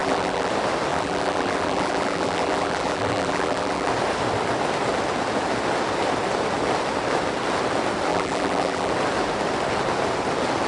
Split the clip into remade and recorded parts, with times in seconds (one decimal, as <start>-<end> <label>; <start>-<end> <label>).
0.0-0.5 remade; 0.5-0.9 recorded; 0.9-3.9 remade; 3.9-8.1 recorded; 8.1-8.9 remade; 8.9-10.7 recorded